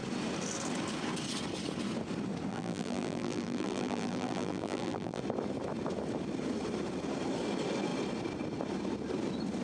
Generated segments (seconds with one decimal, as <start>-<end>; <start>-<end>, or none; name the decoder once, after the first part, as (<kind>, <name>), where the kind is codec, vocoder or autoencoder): 2.5-5.2 (vocoder, BigVGAN v2)